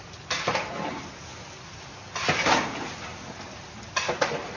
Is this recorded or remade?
recorded